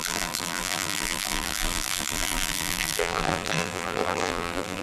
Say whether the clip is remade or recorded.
remade